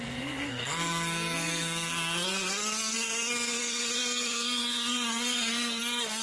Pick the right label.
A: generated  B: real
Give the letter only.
A